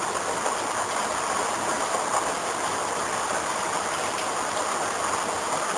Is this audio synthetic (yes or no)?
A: no